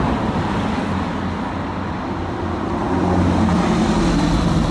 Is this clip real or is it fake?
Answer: real